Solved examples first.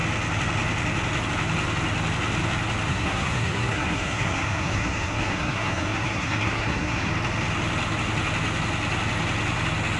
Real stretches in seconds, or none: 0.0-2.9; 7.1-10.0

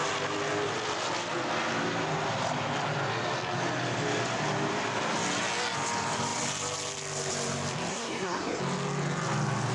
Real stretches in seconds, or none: 0.0-7.9; 8.6-9.7

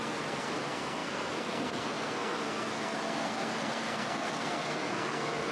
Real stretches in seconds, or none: none

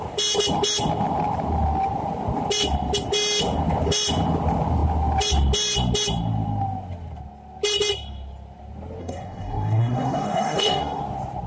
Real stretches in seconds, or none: 0.0-9.0; 11.0-11.5

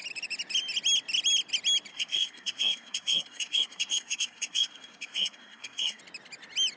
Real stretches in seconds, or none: 0.0-1.9; 6.0-6.8

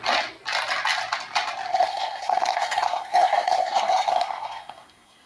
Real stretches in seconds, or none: 0.0-1.7

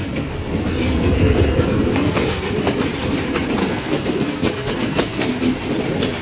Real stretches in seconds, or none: 2.5-3.6; 5.3-6.2